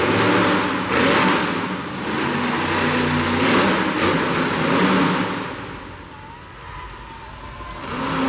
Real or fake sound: real